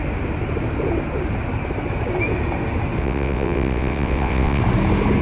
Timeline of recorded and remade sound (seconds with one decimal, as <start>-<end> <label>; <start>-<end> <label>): 0.0-3.0 recorded; 3.0-4.6 remade; 4.6-5.2 recorded